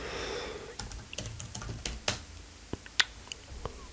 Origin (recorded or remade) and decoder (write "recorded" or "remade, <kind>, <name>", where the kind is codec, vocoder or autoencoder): recorded